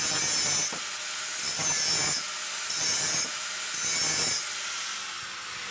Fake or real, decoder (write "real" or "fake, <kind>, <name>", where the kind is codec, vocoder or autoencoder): real